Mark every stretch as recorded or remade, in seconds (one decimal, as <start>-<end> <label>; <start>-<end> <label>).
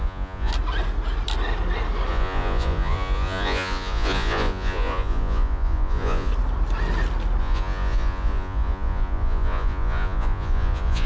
0.0-0.5 remade; 0.5-2.1 recorded; 2.1-6.3 remade; 6.3-7.4 recorded; 7.4-11.1 remade